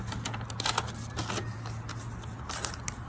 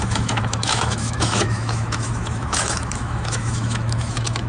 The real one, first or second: first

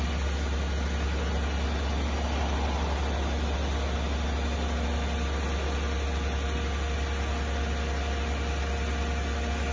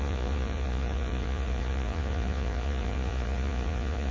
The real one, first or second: first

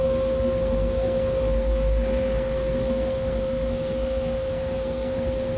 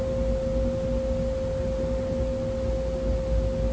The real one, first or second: second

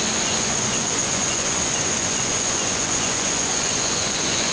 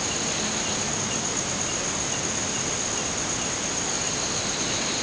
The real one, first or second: second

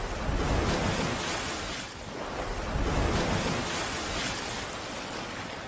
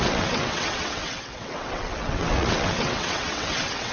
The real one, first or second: first